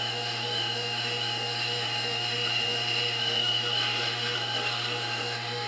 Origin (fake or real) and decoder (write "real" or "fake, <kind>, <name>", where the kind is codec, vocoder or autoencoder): fake, autoencoder, DAC-VAE